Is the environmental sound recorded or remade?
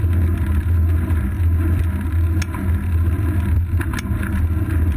recorded